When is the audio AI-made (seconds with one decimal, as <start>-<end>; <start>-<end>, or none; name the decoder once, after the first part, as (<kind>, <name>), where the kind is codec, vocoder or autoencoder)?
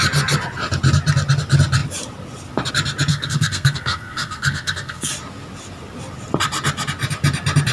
3.1-5.1 (codec, SNAC)